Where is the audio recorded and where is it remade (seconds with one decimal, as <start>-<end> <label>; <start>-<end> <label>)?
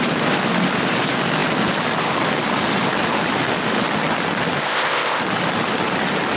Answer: 0.0-4.6 recorded; 4.6-5.2 remade; 5.2-6.4 recorded